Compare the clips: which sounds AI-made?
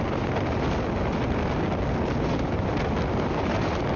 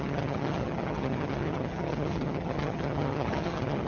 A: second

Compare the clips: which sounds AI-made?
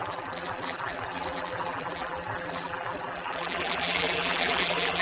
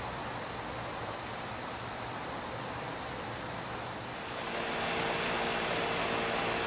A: first